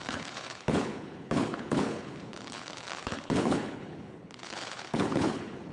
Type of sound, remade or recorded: remade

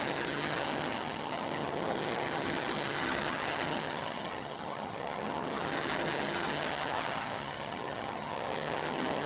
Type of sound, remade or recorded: remade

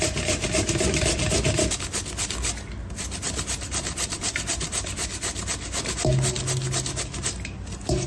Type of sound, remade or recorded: recorded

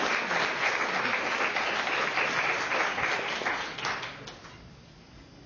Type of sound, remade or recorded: recorded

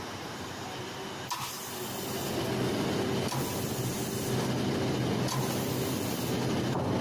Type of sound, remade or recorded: recorded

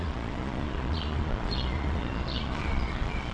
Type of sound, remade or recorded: remade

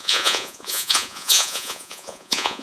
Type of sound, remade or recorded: remade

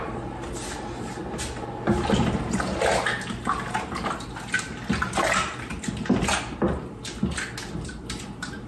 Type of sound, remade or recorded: recorded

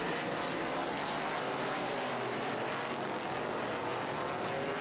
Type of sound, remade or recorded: recorded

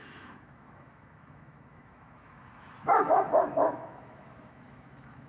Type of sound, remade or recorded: remade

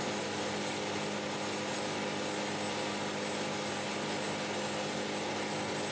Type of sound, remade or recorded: recorded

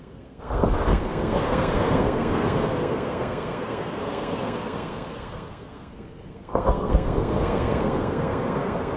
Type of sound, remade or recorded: remade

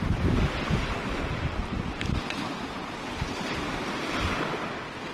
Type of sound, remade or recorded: recorded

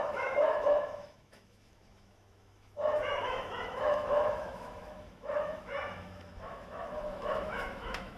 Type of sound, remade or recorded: remade